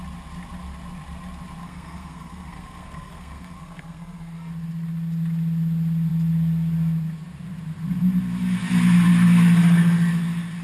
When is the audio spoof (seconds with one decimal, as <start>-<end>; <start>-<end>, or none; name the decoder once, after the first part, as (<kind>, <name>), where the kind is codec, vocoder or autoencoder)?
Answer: 1.6-4.5 (codec, SNAC)